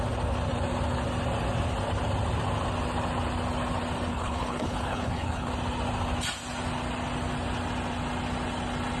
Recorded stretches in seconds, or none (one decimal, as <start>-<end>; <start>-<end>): 0.0-4.1; 5.5-9.0